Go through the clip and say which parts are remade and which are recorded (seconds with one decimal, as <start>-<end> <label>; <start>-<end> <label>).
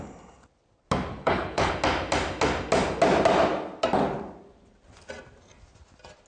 0.0-1.1 recorded; 1.1-1.7 remade; 1.7-6.3 recorded